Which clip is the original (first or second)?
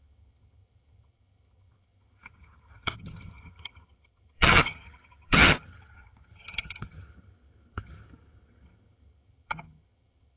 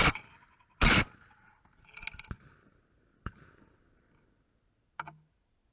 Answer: second